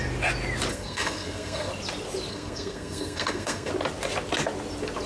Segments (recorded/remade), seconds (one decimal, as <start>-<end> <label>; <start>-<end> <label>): 0.0-0.7 recorded; 0.7-1.7 remade; 1.7-2.3 recorded; 2.3-3.7 remade; 3.7-5.1 recorded

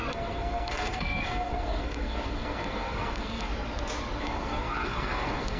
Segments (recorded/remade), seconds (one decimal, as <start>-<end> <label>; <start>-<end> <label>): 0.0-3.5 remade; 3.5-4.2 recorded; 4.2-5.6 remade